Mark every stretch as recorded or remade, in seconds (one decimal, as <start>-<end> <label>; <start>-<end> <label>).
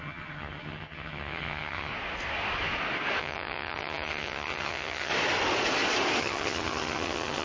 0.0-1.9 remade; 1.9-3.2 recorded; 3.2-5.1 remade; 5.1-6.2 recorded; 6.2-7.4 remade